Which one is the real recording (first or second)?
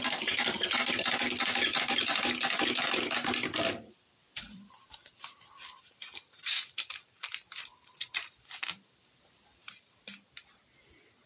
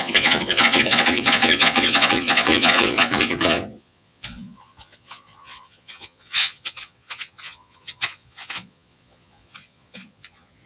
first